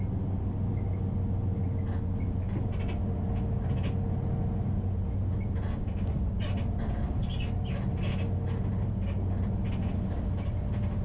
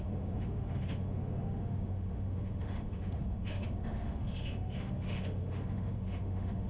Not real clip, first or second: second